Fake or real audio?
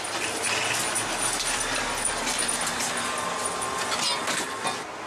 real